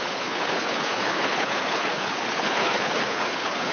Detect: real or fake fake